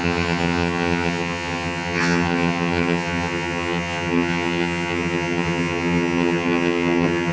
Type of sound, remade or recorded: remade